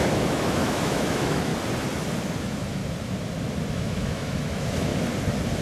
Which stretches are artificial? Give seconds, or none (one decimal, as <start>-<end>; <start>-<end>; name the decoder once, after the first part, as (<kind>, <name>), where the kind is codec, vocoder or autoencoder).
0.0-1.5 (autoencoder, DAC-VAE); 2.4-2.8; 3.7-4.9